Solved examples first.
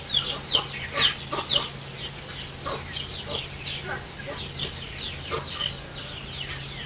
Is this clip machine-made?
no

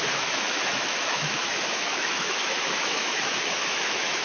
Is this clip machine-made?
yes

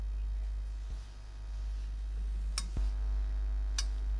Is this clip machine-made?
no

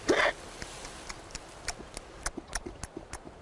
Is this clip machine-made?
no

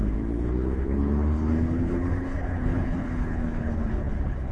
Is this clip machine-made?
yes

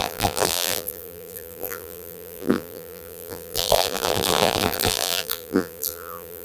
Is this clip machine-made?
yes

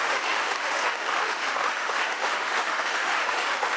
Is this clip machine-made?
yes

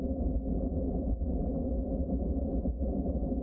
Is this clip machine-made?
no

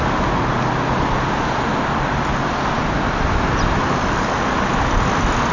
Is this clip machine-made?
no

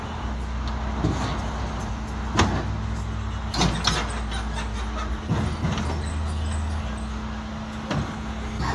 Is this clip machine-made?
no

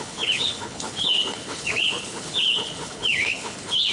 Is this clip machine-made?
yes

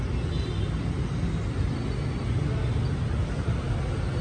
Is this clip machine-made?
no